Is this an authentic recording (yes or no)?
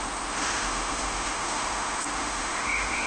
no